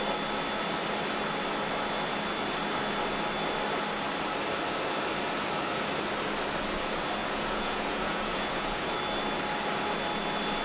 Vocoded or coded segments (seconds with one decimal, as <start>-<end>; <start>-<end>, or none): 7.2-8.9